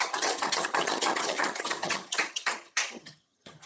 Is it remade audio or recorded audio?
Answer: remade